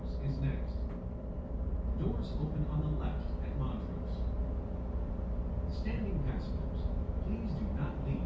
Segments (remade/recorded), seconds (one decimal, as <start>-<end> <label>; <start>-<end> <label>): 0.0-1.3 recorded; 1.3-3.0 remade; 3.0-8.3 recorded

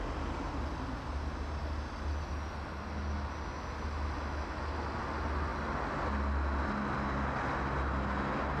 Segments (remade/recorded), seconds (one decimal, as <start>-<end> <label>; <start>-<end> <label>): 0.0-8.6 recorded

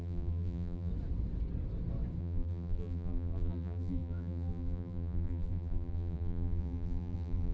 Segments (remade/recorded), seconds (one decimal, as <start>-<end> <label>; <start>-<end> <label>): 0.0-0.9 remade; 0.9-2.2 recorded; 2.2-7.5 remade

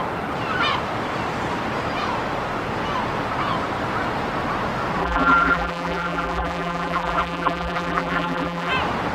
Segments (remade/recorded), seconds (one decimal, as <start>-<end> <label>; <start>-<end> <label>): 0.0-5.0 recorded; 5.0-8.7 remade; 8.7-9.1 recorded

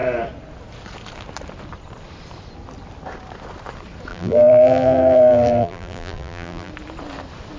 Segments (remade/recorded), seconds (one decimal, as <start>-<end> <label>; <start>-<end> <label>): 0.0-4.1 recorded; 4.1-6.7 remade; 6.7-7.6 recorded

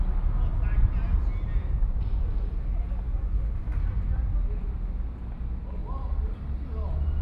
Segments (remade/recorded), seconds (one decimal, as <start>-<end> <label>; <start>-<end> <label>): 0.0-5.8 recorded; 5.8-6.6 remade; 6.6-7.2 recorded

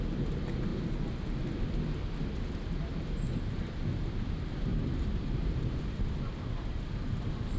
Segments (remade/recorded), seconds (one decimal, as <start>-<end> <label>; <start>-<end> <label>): 0.0-4.7 recorded; 4.7-7.6 remade

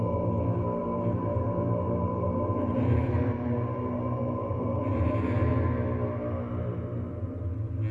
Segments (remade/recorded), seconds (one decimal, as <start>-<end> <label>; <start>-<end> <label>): 0.0-0.8 recorded; 0.8-5.5 remade; 5.5-7.9 recorded